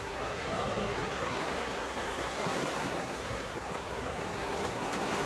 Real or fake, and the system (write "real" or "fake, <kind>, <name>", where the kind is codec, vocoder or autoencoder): fake, codec, SNAC